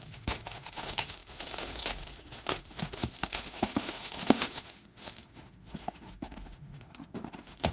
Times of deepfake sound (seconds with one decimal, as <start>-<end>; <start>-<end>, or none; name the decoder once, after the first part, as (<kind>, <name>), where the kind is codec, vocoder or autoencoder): 0.0-7.7 (autoencoder, DAC-VAE)